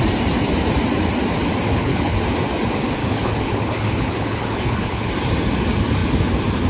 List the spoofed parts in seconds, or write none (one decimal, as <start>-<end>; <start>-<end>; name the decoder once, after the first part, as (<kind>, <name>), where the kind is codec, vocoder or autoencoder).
1.7-2.2 (codec, HILCodec); 3.0-5.1